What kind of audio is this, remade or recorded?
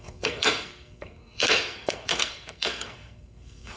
remade